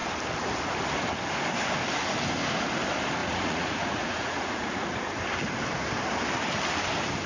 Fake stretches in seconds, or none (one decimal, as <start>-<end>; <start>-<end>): 3.2-5.1